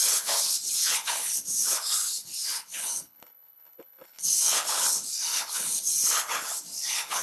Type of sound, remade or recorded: remade